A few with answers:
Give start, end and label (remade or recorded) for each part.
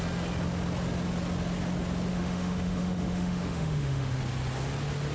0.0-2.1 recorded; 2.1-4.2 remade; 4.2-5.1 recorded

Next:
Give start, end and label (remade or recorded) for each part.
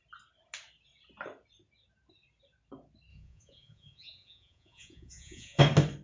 0.0-3.1 recorded; 3.1-5.6 remade; 5.6-6.0 recorded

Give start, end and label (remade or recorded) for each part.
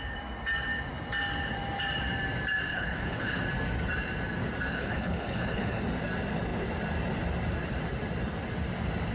0.0-2.7 recorded; 2.7-3.4 remade; 3.4-4.7 recorded; 4.7-5.8 remade; 5.8-9.1 recorded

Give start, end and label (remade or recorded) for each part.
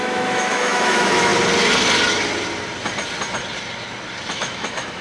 0.0-1.3 remade; 1.3-4.3 recorded; 4.3-5.0 remade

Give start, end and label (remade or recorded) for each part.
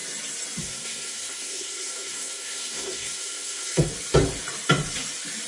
0.0-0.6 recorded; 0.6-3.9 remade; 3.9-5.5 recorded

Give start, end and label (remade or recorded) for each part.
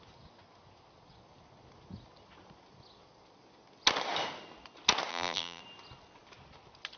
0.0-5.1 recorded; 5.1-5.6 remade; 5.6-7.0 recorded